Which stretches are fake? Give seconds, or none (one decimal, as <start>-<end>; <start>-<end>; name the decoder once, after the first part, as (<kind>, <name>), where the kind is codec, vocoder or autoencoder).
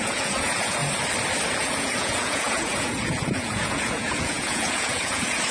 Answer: 0.0-0.8 (vocoder, Vocos); 1.6-5.5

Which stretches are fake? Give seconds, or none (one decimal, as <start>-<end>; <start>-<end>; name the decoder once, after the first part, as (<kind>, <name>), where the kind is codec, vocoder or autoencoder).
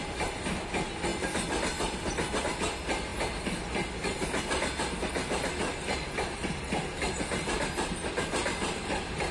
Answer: none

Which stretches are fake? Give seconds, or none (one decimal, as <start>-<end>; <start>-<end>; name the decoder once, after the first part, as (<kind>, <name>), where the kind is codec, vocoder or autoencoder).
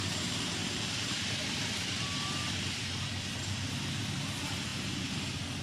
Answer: 0.6-4.0 (vocoder, BigVGAN v2)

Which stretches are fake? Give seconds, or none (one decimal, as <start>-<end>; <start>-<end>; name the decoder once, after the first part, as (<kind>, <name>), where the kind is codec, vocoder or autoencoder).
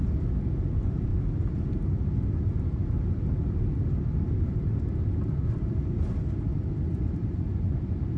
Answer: 0.0-1.1 (vocoder, BigVGAN v2); 3.0-6.5; 7.6-8.2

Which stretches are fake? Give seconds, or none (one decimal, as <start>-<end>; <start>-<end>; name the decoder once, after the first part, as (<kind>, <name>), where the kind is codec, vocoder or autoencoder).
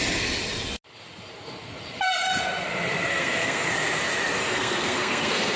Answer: 3.1-3.7 (codec, SNAC); 4.4-5.6